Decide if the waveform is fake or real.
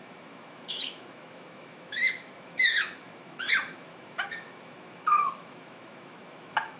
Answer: fake